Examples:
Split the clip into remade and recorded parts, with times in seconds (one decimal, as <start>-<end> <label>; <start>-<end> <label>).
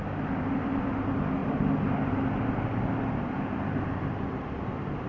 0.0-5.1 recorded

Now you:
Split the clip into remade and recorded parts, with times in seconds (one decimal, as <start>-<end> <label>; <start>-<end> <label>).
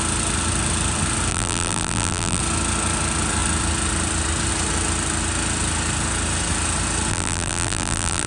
0.0-1.3 recorded; 1.3-2.4 remade; 2.4-7.1 recorded; 7.1-8.3 remade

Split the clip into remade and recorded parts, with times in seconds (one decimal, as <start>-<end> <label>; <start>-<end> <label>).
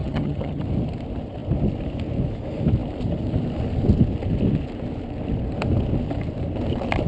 0.0-0.6 remade; 0.6-7.1 recorded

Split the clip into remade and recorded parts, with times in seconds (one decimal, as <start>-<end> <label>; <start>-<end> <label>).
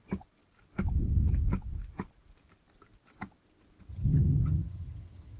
0.0-3.9 recorded; 3.9-5.4 remade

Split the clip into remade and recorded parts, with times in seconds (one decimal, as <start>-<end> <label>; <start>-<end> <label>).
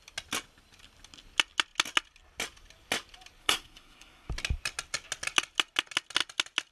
0.0-3.4 recorded; 3.4-4.3 remade; 4.3-6.7 recorded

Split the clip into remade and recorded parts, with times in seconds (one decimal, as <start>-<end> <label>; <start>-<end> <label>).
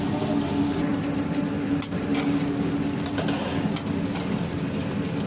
0.0-5.3 recorded